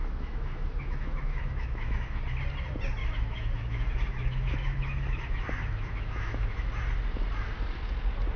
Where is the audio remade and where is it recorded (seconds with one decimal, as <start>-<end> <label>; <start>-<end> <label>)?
0.0-2.2 remade; 2.2-3.0 recorded; 3.0-6.7 remade; 6.7-8.4 recorded